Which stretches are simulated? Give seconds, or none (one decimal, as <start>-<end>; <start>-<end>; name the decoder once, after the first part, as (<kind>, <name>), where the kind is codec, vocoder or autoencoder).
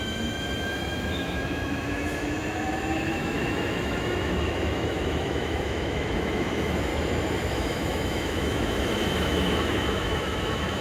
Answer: 0.0-6.9 (autoencoder, DAC-VAE); 7.5-10.8